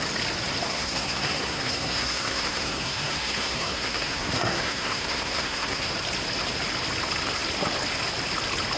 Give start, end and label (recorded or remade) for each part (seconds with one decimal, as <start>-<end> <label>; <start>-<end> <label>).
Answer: 0.0-0.7 recorded; 0.7-5.9 remade; 5.9-8.8 recorded